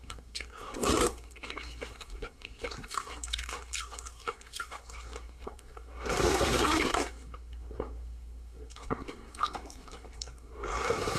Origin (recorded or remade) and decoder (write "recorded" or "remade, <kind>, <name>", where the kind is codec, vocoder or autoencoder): remade, codec, SNAC